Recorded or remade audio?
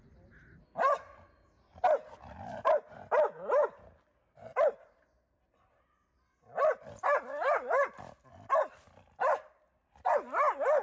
recorded